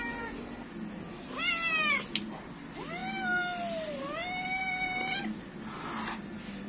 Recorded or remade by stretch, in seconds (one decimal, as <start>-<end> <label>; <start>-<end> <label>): 0.0-6.7 recorded